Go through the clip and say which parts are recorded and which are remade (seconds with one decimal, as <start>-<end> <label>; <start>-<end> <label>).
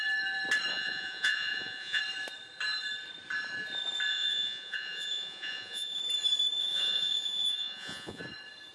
0.0-0.7 recorded; 0.7-2.0 remade; 2.0-4.1 recorded; 4.1-6.0 remade; 6.0-6.6 recorded; 6.6-8.2 remade; 8.2-8.7 recorded